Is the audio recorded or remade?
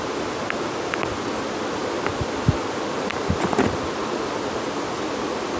recorded